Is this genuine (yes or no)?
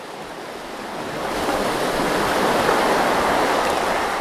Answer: yes